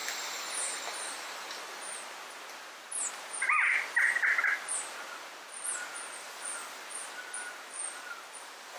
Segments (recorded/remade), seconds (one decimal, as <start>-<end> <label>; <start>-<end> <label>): 0.0-8.8 recorded